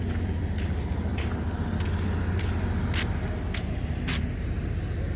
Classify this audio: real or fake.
real